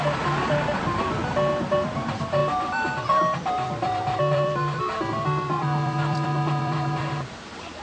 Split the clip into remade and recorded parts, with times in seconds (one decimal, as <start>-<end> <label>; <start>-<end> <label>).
0.0-1.2 remade; 1.2-1.7 recorded; 1.7-7.8 remade